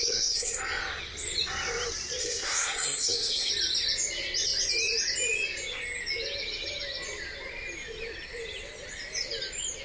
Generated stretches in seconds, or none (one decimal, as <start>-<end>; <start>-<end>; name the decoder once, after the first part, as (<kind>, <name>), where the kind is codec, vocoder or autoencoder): 0.0-0.6 (codec, SNAC); 2.2-3.5